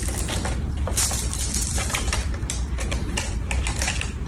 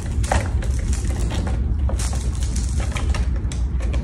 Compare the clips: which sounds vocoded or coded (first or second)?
first